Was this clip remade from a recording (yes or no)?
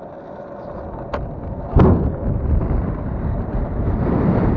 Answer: no